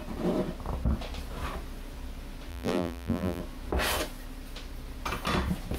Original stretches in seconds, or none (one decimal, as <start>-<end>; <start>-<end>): 0.0-2.5; 3.4-5.8